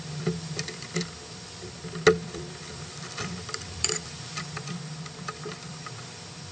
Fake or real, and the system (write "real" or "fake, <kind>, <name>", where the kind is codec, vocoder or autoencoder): fake, vocoder, BigVGAN v2